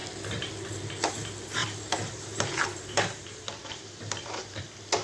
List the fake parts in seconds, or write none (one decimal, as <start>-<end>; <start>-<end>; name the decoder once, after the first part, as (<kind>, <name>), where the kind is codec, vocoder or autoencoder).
1.6-4.6 (vocoder, BigVGAN v2)